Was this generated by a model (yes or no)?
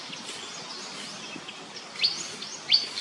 no